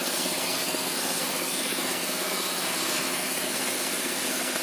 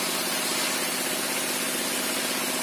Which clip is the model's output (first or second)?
first